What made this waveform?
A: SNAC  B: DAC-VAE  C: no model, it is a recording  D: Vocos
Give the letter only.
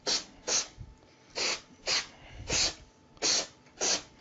C